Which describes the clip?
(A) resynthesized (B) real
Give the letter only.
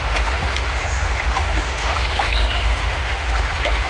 A